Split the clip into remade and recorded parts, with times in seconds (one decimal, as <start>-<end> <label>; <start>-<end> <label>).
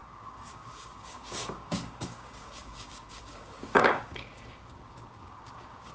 0.0-5.9 remade